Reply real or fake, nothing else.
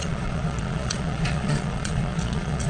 fake